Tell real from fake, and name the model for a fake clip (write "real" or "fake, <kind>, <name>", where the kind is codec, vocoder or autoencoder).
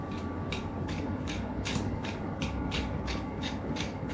fake, codec, DAC